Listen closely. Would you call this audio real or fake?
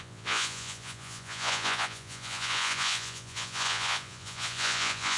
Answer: fake